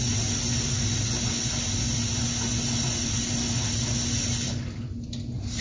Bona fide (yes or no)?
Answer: yes